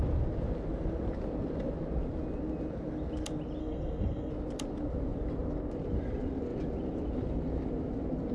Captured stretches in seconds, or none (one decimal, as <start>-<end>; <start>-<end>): 0.0-3.6; 4.3-8.3